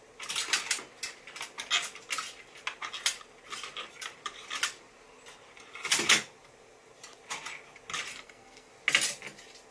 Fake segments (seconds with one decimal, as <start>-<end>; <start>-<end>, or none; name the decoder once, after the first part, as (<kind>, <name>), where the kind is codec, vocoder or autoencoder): 8.1-8.7 (codec, SNAC)